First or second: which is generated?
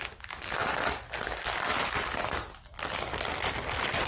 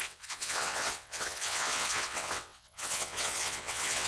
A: second